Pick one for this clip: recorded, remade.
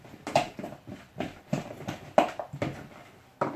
recorded